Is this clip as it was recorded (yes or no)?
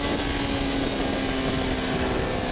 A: yes